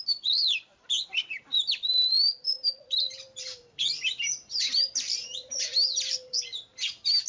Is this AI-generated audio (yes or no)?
yes